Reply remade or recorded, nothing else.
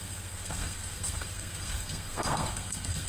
remade